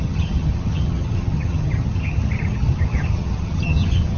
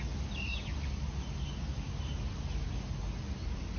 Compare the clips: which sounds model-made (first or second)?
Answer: first